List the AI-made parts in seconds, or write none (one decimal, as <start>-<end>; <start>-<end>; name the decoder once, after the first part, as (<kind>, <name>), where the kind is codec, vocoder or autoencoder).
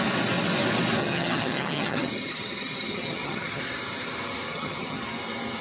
1.0-3.6 (vocoder, HiFi-GAN); 4.5-5.0